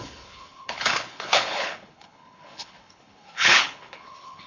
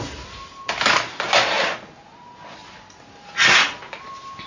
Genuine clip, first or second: second